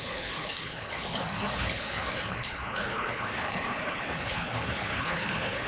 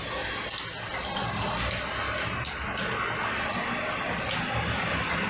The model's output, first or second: first